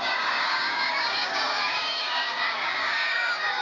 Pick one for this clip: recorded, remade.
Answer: remade